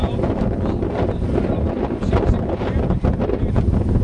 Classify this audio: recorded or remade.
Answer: recorded